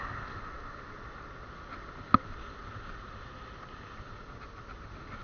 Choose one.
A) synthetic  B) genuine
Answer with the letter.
B